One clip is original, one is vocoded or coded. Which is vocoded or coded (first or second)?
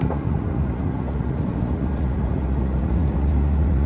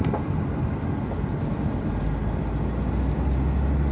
first